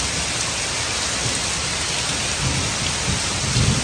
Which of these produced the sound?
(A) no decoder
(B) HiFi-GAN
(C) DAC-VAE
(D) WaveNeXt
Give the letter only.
A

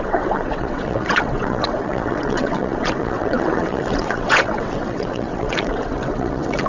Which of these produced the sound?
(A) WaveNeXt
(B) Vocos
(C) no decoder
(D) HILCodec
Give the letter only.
A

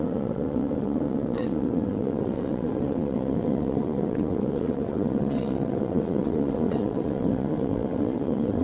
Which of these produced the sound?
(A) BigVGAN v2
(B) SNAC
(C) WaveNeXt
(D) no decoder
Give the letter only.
C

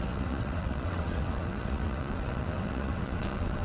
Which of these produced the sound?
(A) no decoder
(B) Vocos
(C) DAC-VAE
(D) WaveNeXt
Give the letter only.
D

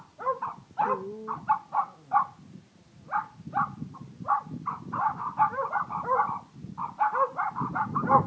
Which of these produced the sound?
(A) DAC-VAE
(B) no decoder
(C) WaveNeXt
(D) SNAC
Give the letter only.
B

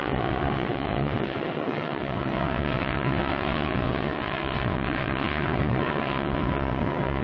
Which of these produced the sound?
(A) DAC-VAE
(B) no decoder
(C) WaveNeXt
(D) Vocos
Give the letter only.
C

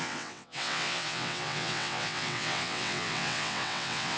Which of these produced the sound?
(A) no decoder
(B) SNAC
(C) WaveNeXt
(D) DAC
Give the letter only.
C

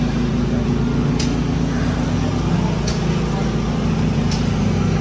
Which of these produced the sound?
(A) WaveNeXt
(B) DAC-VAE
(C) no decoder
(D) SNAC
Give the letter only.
C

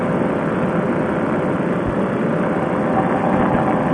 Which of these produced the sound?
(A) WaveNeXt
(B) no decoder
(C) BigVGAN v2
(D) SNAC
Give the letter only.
B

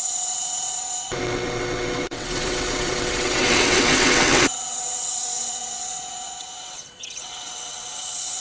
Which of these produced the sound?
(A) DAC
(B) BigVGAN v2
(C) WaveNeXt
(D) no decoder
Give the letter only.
C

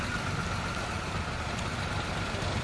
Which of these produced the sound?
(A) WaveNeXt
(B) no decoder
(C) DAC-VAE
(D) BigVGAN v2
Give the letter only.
B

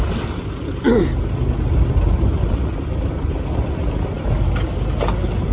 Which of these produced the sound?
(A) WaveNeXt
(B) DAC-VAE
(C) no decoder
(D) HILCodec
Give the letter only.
C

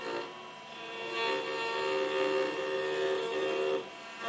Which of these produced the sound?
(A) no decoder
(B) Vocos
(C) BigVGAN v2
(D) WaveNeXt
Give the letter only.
A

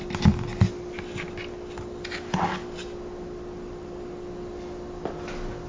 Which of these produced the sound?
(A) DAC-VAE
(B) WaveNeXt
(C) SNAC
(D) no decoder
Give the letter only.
D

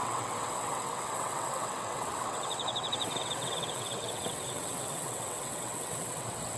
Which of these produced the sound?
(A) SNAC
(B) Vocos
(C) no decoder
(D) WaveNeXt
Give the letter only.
D